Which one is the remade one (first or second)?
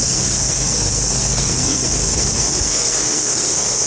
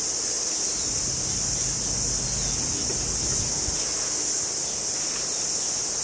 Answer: first